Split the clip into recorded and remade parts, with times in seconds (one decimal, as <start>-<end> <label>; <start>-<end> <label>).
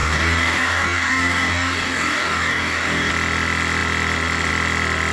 0.0-3.1 remade; 3.1-5.1 recorded